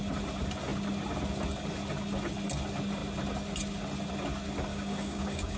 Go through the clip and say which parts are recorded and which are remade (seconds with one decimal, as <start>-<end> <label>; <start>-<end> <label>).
0.0-4.7 recorded; 4.7-5.6 remade